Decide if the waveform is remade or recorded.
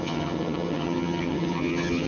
remade